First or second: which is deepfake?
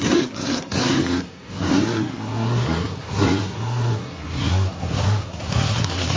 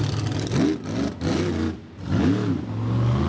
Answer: first